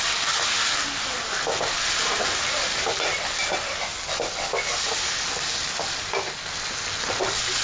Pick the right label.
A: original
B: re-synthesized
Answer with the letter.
A